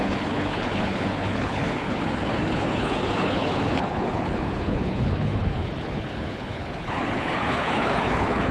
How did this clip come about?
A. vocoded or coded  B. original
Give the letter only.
A